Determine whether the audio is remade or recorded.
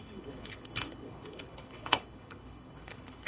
remade